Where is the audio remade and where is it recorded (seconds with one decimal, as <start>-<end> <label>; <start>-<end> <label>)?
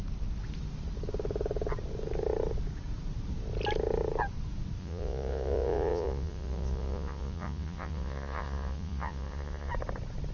0.0-4.8 recorded; 4.8-9.7 remade; 9.7-10.3 recorded